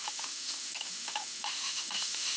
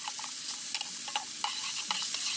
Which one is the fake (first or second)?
first